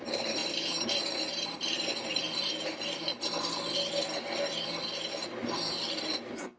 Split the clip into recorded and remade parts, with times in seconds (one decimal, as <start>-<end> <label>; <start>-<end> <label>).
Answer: 0.0-3.1 remade; 3.1-5.9 recorded; 5.9-6.6 remade